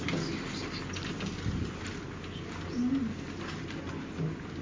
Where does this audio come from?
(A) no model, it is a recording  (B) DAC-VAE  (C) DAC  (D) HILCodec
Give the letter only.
A